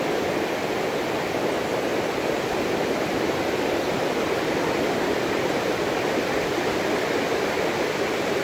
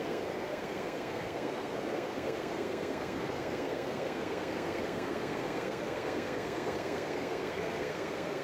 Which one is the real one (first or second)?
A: first